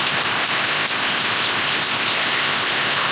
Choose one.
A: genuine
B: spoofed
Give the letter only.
B